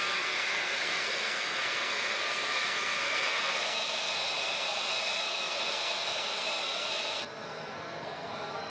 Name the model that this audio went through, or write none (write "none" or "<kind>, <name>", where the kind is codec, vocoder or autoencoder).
codec, SNAC